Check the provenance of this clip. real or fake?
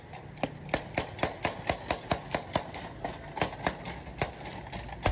real